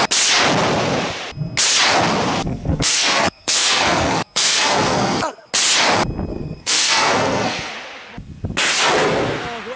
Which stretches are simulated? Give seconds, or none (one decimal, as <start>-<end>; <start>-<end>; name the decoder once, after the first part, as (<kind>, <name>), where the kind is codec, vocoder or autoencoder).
2.4-5.5 (codec, SNAC); 6.3-7.7